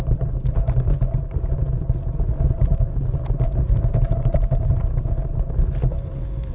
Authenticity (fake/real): real